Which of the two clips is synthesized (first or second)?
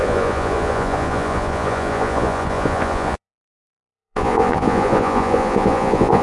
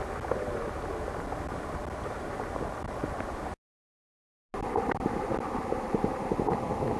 first